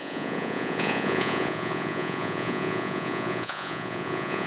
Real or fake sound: fake